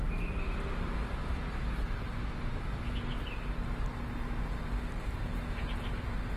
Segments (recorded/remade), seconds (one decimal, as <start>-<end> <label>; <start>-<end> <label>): 0.0-6.4 recorded